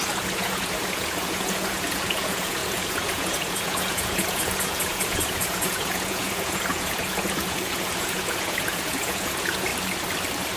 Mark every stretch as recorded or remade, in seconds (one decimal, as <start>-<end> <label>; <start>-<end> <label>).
0.0-9.7 remade; 9.7-10.6 recorded